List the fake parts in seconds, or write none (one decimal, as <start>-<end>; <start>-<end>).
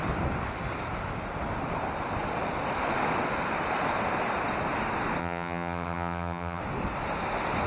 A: 5.2-6.6